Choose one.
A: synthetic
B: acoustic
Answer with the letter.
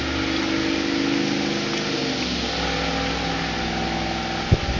B